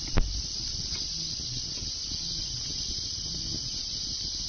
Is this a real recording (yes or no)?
yes